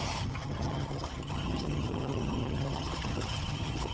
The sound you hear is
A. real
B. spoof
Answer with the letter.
B